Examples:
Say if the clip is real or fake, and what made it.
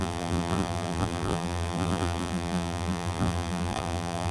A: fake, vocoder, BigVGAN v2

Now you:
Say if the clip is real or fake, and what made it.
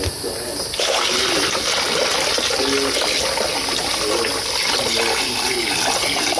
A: real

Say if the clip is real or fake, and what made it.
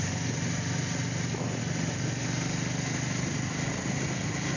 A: real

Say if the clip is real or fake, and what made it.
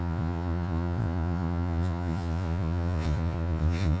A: fake, vocoder, Vocos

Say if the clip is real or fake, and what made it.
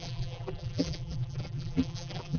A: fake, vocoder, BigVGAN v2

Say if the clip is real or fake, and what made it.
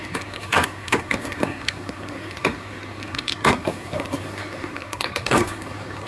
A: fake, codec, SNAC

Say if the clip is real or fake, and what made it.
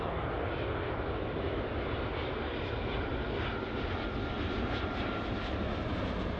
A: real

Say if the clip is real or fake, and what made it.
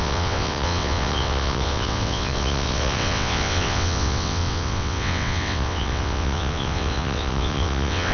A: fake, vocoder, WaveNeXt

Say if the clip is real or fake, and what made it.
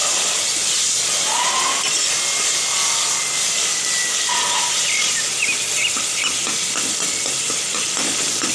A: real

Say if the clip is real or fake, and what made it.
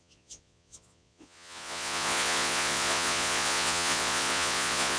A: fake, vocoder, Vocos